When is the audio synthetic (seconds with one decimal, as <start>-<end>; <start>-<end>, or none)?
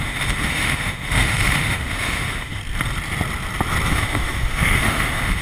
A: 0.0-2.6; 3.9-5.4